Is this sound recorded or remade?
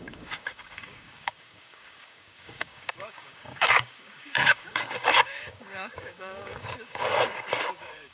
remade